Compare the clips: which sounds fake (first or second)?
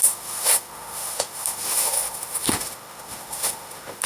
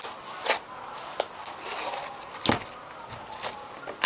first